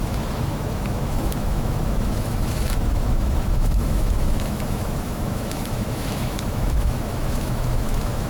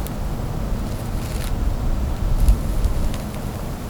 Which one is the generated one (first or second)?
first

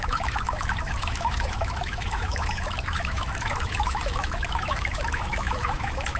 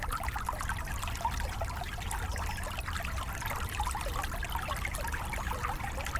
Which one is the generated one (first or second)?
first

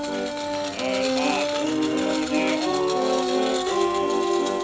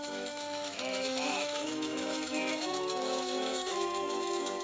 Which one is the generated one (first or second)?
second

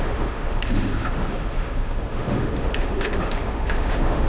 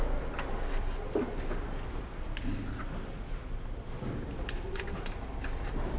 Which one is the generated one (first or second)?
first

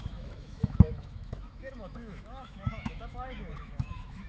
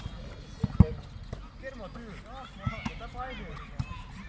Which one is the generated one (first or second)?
first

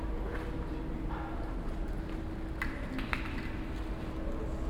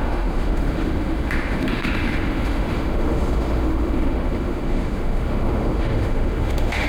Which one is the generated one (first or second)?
second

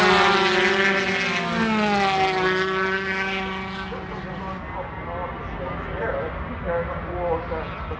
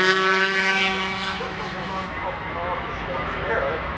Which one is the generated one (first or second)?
second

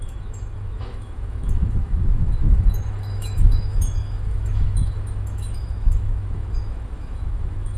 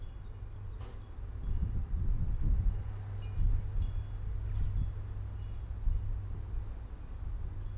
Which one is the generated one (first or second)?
first